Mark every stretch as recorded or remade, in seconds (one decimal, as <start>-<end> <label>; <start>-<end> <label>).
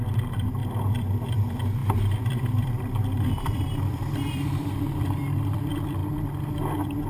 0.0-0.6 remade; 0.6-1.3 recorded; 1.3-6.0 remade; 6.0-7.1 recorded